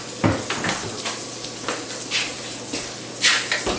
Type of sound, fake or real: real